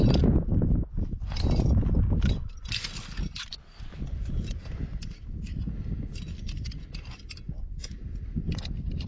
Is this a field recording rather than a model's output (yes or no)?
yes